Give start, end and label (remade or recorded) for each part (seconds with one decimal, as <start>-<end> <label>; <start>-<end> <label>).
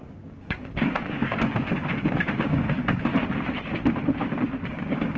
0.0-3.1 remade; 3.1-4.7 recorded; 4.7-5.2 remade